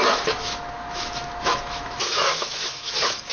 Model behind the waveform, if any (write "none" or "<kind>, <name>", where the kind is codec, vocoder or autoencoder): autoencoder, DAC-VAE